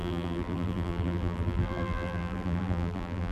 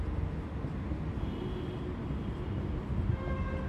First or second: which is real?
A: second